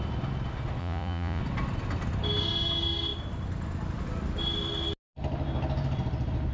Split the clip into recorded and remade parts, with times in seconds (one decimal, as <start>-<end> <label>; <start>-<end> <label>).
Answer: 0.0-0.8 recorded; 0.8-1.4 remade; 1.4-6.5 recorded